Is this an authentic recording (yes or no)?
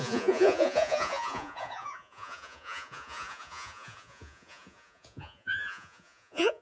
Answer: no